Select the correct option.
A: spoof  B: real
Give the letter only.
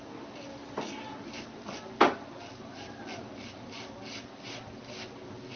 B